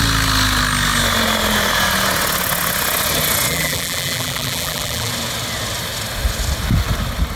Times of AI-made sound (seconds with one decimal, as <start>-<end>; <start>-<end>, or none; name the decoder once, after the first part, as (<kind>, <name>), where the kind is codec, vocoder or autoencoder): 3.5-5.1 (vocoder, BigVGAN v2)